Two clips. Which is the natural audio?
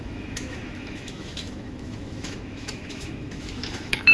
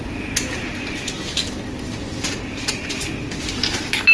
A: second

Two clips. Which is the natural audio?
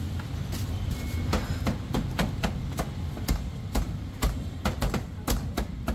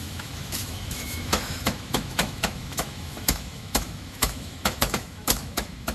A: first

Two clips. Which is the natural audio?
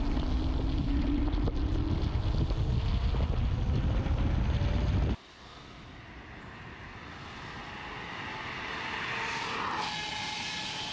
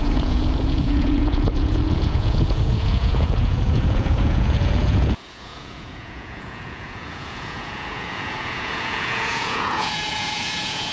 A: first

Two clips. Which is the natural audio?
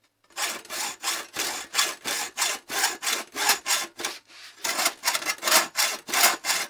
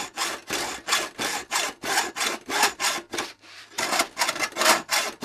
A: first